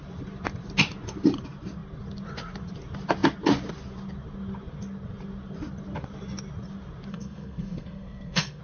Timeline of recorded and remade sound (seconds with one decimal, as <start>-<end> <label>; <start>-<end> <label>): 0.0-7.1 recorded; 7.1-8.6 remade